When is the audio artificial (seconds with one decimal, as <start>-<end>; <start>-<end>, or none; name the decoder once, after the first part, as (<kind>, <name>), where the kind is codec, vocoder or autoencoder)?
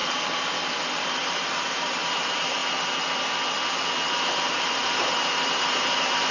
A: 1.2-2.6 (vocoder, BigVGAN v2); 4.5-6.3